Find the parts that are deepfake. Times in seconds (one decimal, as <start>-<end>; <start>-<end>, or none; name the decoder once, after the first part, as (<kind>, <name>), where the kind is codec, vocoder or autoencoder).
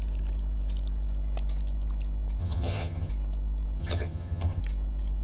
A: 2.4-3.1 (vocoder, HiFi-GAN); 3.8-4.6